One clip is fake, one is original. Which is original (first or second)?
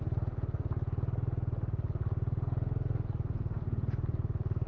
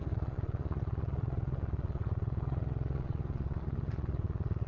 first